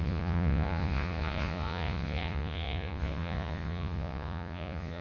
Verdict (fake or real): fake